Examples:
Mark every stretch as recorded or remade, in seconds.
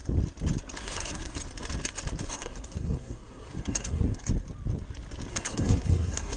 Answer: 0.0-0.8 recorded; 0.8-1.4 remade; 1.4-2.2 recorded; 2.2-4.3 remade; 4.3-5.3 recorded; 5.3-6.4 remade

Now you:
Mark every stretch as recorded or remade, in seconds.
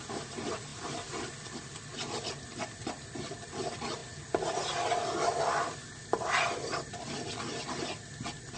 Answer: 0.0-8.6 recorded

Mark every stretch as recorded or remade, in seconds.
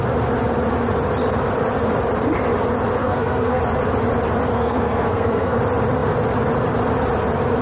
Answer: 0.0-3.0 recorded; 3.0-3.6 remade; 3.6-4.5 recorded; 4.5-5.6 remade; 5.6-7.6 recorded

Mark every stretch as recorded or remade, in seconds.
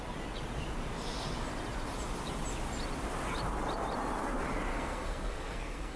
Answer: 0.0-4.7 recorded; 4.7-6.0 remade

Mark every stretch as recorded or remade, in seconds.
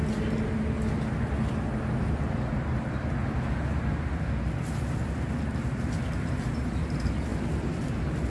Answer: 0.0-8.3 recorded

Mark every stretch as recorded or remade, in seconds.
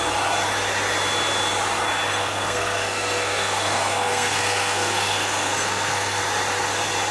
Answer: 0.0-2.1 recorded; 2.1-6.2 remade; 6.2-7.1 recorded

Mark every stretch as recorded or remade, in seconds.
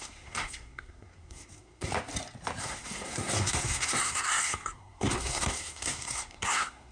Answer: 0.0-1.9 remade; 1.9-2.6 recorded; 2.6-6.9 remade